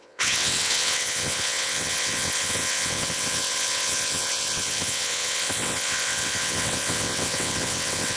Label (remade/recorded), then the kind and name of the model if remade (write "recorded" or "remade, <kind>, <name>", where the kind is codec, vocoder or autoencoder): remade, vocoder, WaveNeXt